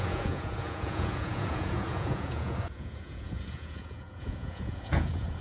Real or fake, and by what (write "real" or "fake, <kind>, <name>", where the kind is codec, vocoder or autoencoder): fake, vocoder, Vocos